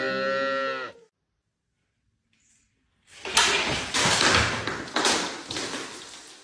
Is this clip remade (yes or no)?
no